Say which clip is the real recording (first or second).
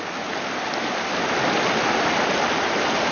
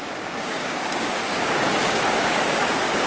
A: first